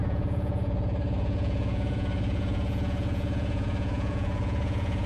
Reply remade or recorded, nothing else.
remade